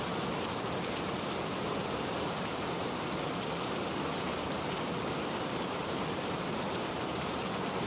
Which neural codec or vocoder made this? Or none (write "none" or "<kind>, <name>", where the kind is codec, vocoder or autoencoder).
vocoder, BigVGAN v2